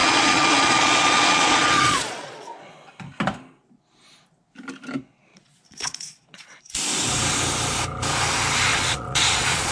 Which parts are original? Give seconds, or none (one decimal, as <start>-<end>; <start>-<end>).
2.7-5.3; 6.6-8.7